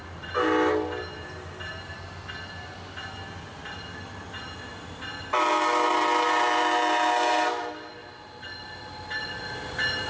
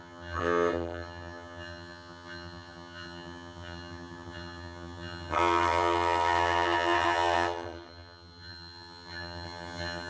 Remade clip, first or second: second